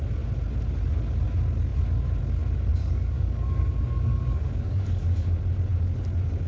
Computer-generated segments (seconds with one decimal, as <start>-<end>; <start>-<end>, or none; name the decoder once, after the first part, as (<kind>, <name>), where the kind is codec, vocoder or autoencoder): 2.8-5.4 (codec, DAC)